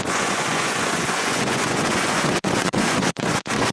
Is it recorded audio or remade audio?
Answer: remade